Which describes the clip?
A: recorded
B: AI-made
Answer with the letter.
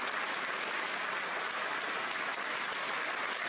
A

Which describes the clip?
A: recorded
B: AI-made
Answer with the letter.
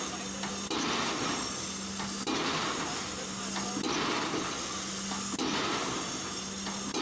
A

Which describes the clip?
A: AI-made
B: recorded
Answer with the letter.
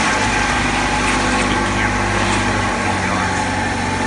B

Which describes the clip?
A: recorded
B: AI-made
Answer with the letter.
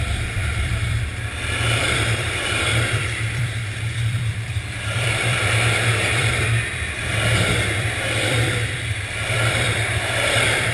B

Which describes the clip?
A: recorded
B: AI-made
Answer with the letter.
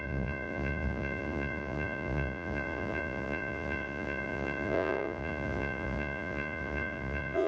B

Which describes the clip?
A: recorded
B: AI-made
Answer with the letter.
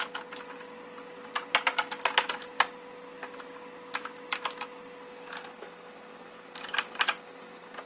A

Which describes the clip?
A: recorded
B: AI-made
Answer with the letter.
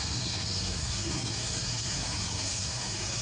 B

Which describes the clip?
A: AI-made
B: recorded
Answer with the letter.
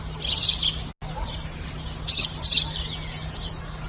B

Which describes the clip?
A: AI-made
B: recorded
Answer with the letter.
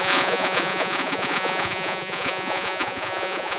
A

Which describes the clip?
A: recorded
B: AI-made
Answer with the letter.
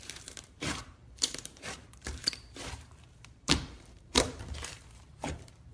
B